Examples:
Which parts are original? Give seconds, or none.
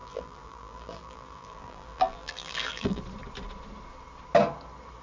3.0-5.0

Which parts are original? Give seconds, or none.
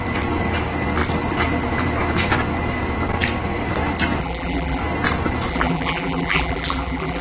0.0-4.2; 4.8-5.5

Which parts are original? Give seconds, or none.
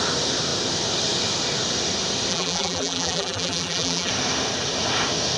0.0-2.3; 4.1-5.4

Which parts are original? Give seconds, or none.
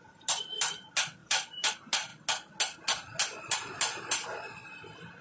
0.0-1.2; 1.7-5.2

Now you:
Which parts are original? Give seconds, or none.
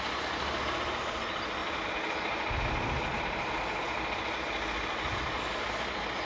0.0-6.3